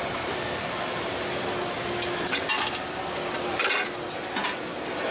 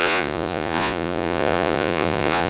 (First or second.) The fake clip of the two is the second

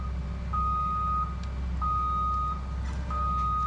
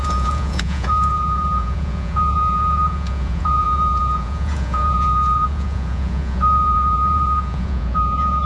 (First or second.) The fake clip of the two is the second